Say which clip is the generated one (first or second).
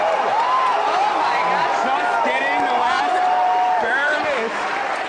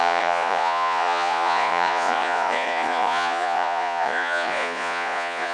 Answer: second